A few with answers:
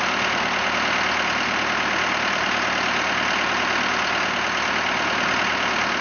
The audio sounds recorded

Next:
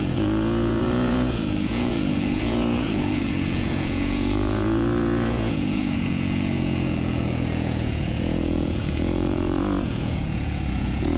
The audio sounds remade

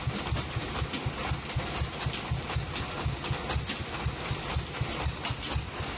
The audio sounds recorded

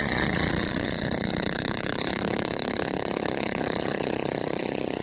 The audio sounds remade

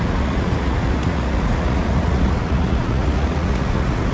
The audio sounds remade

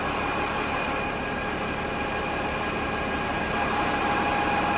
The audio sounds recorded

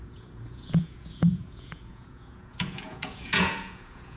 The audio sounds remade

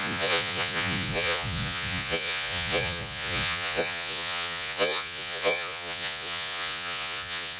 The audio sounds remade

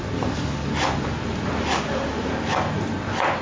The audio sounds recorded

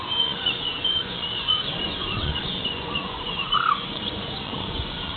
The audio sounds remade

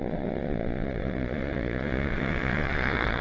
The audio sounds remade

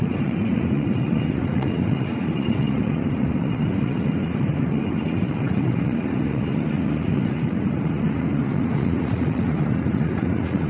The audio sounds remade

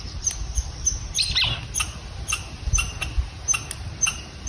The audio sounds recorded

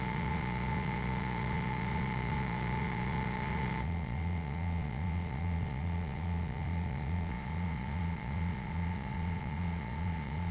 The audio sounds remade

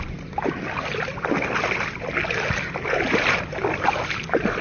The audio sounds recorded